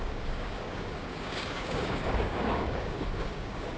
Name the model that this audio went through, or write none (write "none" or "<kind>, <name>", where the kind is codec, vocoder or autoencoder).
codec, DAC